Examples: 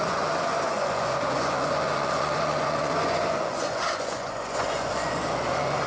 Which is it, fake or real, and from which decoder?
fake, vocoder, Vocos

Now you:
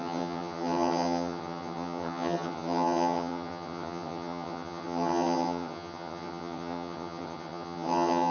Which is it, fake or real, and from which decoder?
fake, vocoder, HiFi-GAN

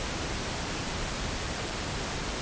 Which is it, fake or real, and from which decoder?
fake, vocoder, BigVGAN v2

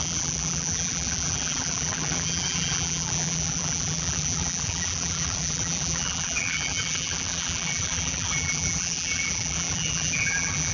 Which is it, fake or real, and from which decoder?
fake, vocoder, BigVGAN v2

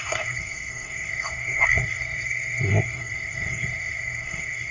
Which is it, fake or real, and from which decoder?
fake, codec, SNAC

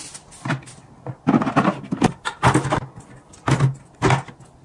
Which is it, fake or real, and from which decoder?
real